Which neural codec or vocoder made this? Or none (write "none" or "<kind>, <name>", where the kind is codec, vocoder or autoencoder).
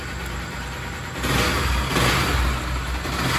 none